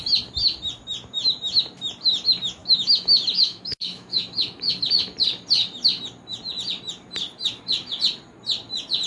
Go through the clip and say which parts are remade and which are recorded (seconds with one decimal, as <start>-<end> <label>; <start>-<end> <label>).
0.0-2.6 recorded; 2.6-4.7 remade; 4.7-9.1 recorded